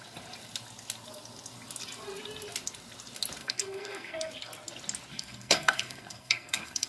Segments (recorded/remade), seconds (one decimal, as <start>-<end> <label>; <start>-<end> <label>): 0.0-3.4 recorded; 3.4-4.3 remade; 4.3-5.1 recorded; 5.1-6.9 remade